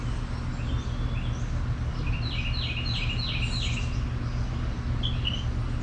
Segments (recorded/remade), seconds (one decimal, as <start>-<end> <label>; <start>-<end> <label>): 0.0-5.8 recorded